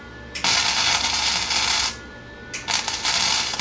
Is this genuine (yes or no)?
yes